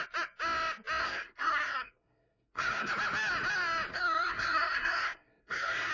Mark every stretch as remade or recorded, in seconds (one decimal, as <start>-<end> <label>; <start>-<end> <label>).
0.0-1.0 recorded; 1.0-2.9 remade; 2.9-3.9 recorded; 3.9-5.9 remade